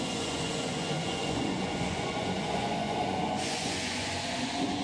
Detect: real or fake fake